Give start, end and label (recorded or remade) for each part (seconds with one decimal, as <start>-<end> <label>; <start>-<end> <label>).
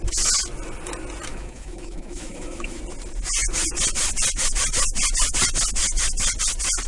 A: 0.0-1.3 recorded; 1.3-2.8 remade; 2.8-6.9 recorded